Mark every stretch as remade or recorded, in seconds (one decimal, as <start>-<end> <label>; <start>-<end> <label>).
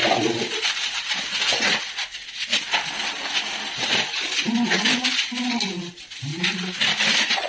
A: 0.0-7.5 recorded